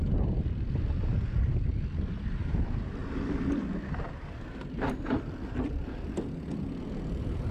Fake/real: real